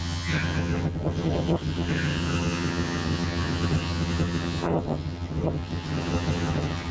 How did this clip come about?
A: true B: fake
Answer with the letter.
B